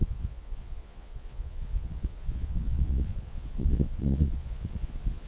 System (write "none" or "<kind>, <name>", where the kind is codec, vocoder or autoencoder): vocoder, Vocos